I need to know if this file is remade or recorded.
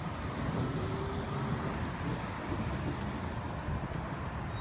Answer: recorded